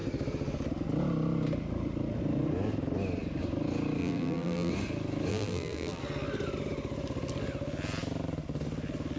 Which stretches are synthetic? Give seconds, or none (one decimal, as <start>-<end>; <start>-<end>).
4.0-4.7; 5.3-6.0